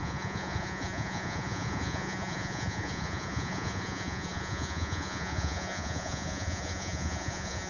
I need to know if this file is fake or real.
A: fake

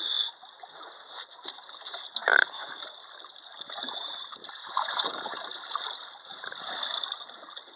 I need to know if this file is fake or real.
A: real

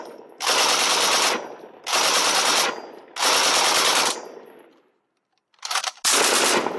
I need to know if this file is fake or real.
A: real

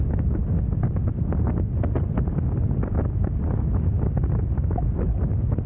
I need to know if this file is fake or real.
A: real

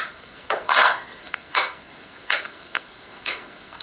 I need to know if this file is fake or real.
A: fake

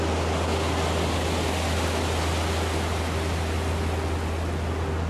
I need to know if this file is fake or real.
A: real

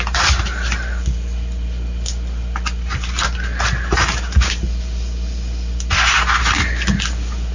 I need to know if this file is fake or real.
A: real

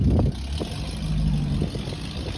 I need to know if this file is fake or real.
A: real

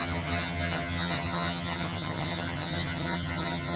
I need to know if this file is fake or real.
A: fake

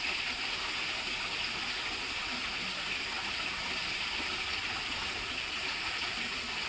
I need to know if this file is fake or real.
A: real